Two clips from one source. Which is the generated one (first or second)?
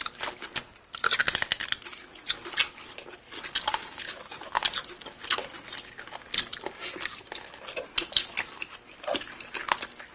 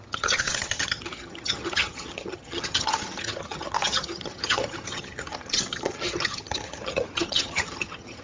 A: second